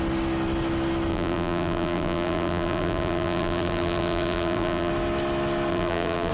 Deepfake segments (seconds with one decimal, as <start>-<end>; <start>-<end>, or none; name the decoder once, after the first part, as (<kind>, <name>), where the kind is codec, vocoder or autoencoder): 1.1-4.9 (vocoder, BigVGAN v2); 5.7-6.3

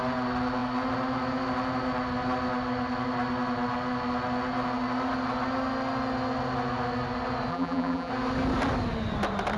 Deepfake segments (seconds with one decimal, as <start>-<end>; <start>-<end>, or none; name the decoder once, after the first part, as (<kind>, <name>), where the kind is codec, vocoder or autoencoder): 7.5-8.1 (vocoder, BigVGAN v2)